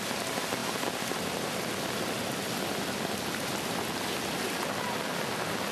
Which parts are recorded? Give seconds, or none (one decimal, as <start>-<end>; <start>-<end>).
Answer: 0.0-5.7

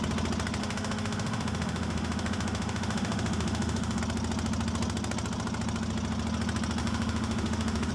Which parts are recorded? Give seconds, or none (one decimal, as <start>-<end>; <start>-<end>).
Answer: 0.0-0.6; 4.0-6.8

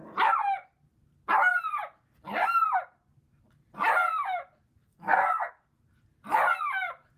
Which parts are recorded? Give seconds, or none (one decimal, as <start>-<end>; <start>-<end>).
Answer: 0.0-4.8; 5.7-7.2